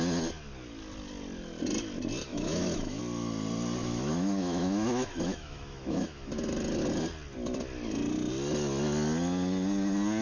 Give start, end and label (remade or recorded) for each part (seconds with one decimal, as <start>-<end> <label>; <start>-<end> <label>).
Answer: 0.0-2.3 recorded; 2.3-3.0 remade; 3.0-3.8 recorded; 3.8-6.3 remade; 6.3-10.2 recorded